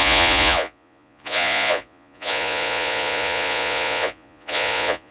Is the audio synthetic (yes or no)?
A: yes